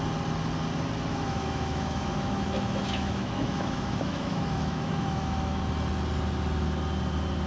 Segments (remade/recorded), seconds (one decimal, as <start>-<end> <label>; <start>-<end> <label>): 0.0-1.1 recorded; 1.1-5.6 remade; 5.6-7.5 recorded